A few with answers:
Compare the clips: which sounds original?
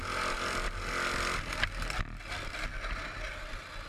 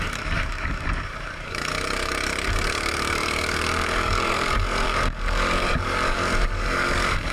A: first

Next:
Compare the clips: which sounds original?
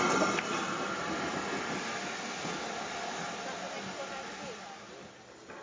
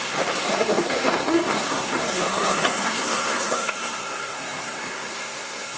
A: first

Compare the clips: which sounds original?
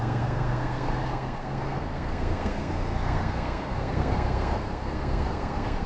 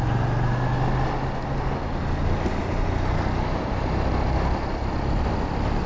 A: second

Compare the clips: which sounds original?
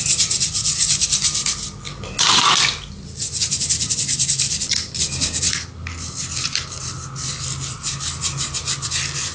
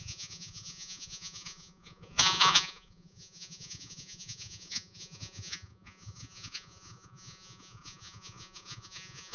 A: first